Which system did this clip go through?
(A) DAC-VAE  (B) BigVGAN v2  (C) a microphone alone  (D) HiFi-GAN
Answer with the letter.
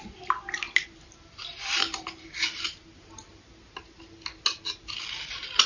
C